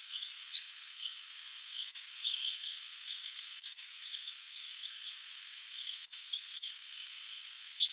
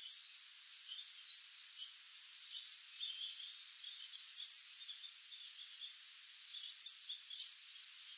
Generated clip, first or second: first